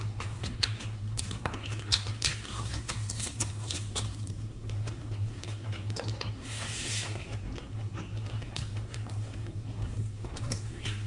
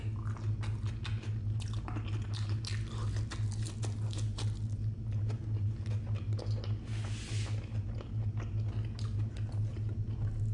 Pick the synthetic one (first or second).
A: first